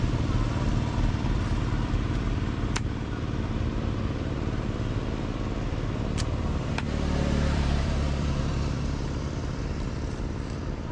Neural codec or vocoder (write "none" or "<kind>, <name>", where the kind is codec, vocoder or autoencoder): vocoder, BigVGAN v2